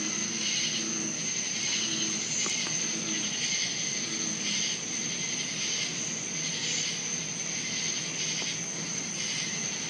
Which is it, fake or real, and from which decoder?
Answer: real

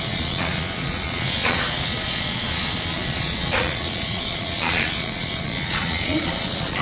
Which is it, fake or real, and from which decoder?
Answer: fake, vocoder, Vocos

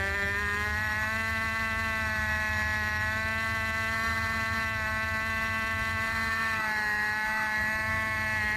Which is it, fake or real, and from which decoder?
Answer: fake, autoencoder, DAC-VAE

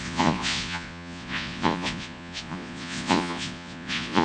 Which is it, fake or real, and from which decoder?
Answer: fake, vocoder, Vocos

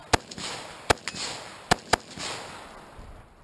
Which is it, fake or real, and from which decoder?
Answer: real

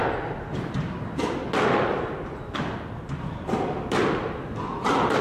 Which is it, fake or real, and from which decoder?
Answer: real